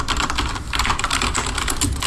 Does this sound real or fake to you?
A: real